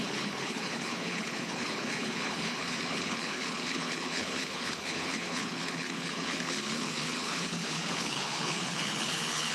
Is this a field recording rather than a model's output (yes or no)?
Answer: no